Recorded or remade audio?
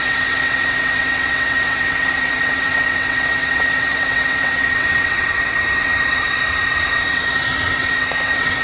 remade